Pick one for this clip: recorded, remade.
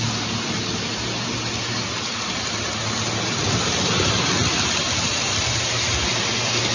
recorded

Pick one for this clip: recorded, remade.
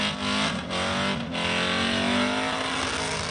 recorded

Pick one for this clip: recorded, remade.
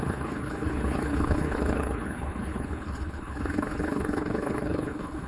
remade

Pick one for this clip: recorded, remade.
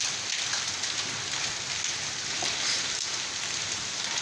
recorded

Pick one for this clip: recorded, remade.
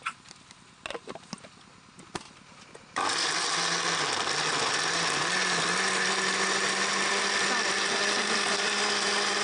recorded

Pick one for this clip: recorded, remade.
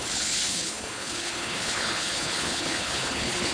remade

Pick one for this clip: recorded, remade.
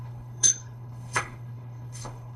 remade